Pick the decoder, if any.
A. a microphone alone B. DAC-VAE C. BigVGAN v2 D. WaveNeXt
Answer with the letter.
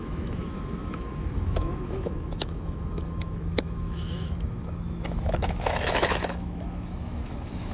B